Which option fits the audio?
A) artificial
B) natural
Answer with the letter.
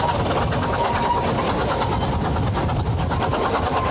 B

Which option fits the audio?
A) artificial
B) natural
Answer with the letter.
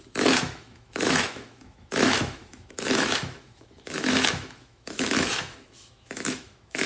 A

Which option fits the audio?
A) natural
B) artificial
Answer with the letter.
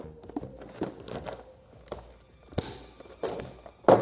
A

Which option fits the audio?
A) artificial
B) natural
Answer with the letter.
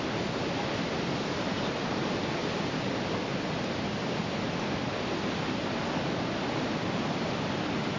B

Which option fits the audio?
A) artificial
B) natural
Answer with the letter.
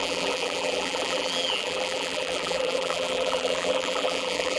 A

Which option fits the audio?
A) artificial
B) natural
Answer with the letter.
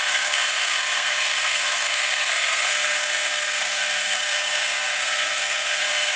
A